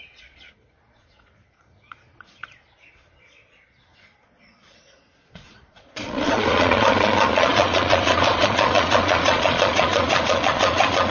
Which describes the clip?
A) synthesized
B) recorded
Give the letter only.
A